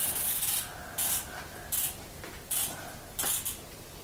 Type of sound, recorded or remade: recorded